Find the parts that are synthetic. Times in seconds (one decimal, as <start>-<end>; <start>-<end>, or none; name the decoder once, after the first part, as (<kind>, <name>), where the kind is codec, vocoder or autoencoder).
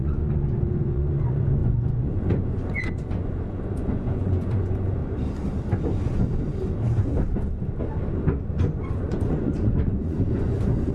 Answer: 0.0-5.0 (vocoder, Vocos); 8.5-10.9